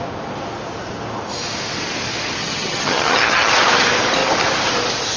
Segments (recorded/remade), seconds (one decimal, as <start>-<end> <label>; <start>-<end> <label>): 0.0-2.4 recorded; 2.4-3.5 remade; 3.5-5.2 recorded